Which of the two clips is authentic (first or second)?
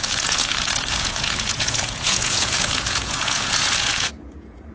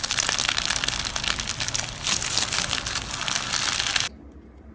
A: second